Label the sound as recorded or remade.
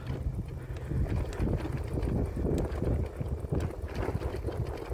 recorded